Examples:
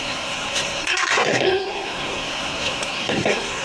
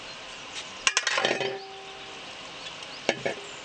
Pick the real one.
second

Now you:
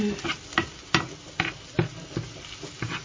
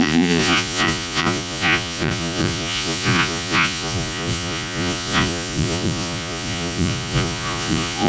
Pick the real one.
first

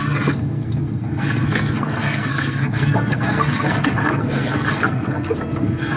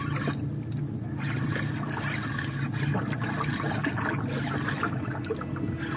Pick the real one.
second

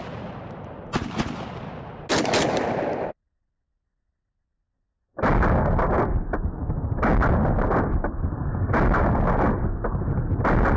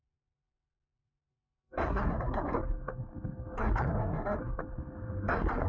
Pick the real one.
first